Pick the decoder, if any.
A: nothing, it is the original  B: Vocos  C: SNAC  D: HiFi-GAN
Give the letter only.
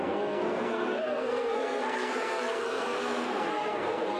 C